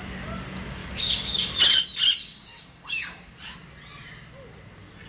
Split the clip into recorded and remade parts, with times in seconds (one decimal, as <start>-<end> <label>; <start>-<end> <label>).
0.0-0.8 recorded; 0.8-1.5 remade; 1.5-2.2 recorded; 2.2-3.4 remade; 3.4-5.1 recorded